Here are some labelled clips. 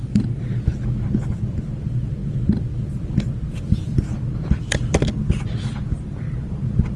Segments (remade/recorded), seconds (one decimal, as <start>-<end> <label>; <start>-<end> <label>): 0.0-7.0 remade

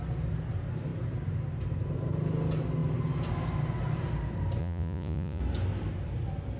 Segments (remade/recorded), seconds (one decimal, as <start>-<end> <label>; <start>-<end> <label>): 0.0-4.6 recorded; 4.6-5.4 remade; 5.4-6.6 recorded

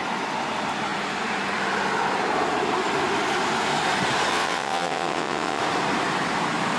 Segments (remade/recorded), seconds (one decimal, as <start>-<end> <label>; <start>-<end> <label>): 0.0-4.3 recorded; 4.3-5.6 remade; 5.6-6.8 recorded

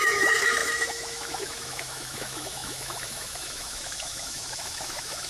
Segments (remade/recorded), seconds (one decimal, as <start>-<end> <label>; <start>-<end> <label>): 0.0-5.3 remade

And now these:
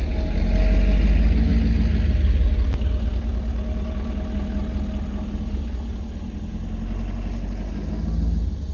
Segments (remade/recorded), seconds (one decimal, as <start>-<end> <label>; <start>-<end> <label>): 0.0-8.7 recorded